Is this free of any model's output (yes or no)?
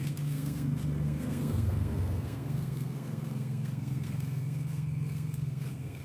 no